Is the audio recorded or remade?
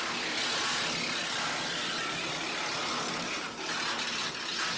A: recorded